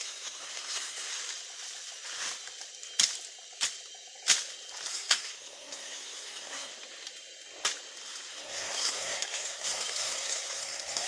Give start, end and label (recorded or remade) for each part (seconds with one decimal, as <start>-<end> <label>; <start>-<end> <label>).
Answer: 0.0-1.1 remade; 1.1-4.9 recorded; 4.9-6.7 remade; 6.7-8.3 recorded; 8.3-11.1 remade